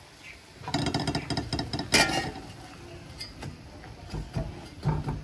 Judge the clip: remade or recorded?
recorded